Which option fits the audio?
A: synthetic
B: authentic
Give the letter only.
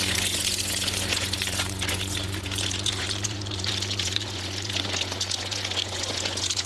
A